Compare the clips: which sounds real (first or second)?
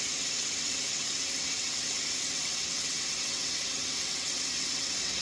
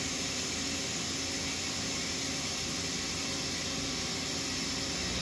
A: second